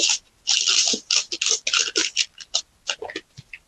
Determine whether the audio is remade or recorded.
recorded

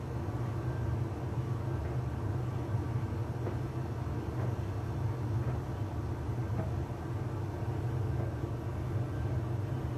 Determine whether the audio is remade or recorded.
recorded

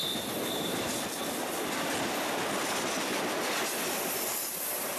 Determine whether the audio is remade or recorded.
recorded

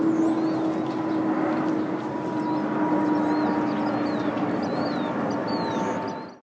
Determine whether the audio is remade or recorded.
recorded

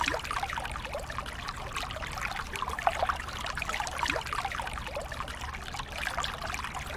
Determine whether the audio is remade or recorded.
recorded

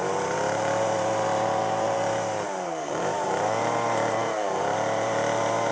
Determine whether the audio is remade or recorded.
remade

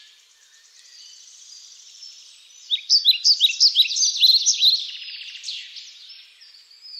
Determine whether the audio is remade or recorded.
recorded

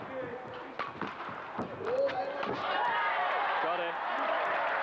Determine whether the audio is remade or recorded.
recorded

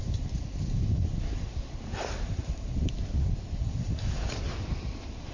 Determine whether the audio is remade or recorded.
remade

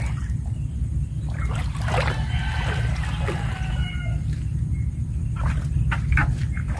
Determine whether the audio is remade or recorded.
recorded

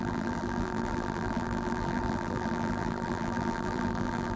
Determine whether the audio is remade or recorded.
remade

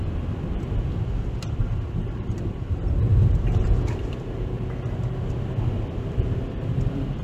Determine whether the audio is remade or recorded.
remade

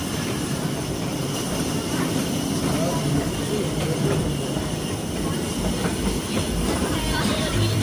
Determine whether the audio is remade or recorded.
remade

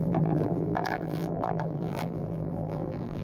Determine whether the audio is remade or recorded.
remade